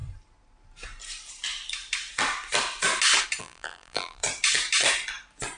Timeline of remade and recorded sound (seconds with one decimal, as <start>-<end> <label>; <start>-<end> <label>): 0.0-3.4 recorded; 3.4-4.2 remade; 4.2-5.6 recorded